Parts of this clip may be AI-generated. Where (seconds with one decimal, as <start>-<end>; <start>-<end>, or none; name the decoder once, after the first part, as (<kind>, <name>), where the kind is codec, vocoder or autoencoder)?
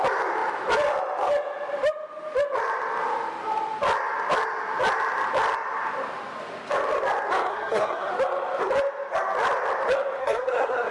7.5-8.1 (codec, SNAC); 10.2-10.9